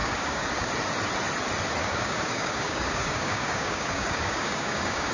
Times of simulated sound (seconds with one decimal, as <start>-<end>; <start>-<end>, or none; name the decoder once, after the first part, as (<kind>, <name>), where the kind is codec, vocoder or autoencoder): 0.0-0.7 (codec, DAC); 1.8-5.1